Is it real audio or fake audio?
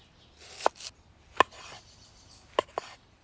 real